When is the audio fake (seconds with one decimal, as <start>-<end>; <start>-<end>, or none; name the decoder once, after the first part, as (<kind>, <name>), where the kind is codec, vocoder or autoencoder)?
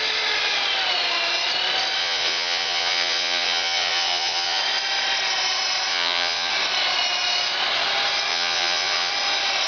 2.0-4.6 (vocoder, Vocos); 5.9-6.5; 8.3-9.1